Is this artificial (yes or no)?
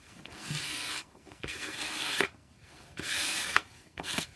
yes